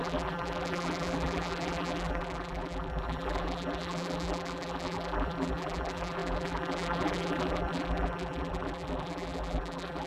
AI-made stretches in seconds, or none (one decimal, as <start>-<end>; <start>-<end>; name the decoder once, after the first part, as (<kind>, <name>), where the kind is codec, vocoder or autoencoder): 0.0-10.1 (vocoder, BigVGAN v2)